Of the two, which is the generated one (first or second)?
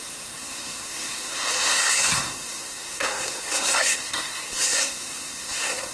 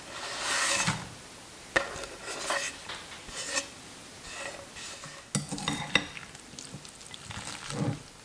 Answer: first